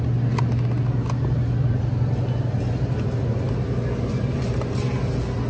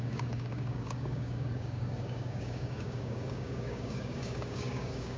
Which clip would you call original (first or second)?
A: first